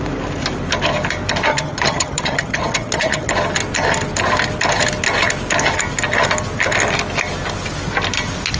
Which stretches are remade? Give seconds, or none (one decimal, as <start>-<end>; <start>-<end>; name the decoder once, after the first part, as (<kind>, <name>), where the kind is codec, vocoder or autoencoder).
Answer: 1.5-3.3 (vocoder, HiFi-GAN)